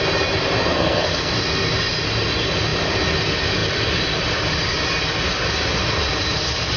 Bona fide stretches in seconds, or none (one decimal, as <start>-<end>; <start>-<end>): 0.0-0.7; 1.3-6.8